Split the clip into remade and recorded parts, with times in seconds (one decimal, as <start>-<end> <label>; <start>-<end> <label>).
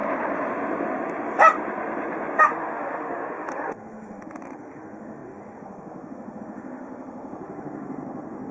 0.0-2.4 recorded; 2.4-8.5 remade